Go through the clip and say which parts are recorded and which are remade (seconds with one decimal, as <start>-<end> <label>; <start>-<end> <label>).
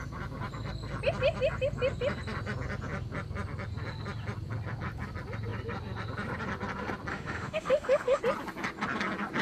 0.0-7.1 recorded; 7.1-8.2 remade; 8.2-9.4 recorded